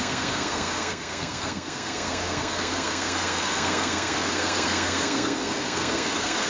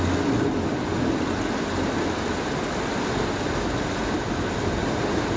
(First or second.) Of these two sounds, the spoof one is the first